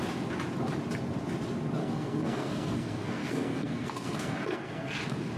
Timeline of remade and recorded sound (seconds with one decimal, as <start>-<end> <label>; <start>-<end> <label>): 0.0-1.8 recorded; 1.8-5.0 remade; 5.0-5.4 recorded